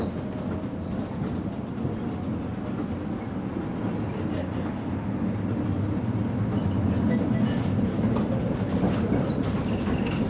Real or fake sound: real